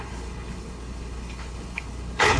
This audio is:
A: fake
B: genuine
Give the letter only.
A